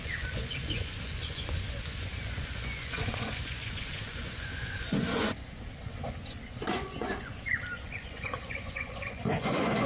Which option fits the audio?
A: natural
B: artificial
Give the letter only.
B